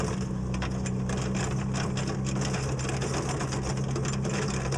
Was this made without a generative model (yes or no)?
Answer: yes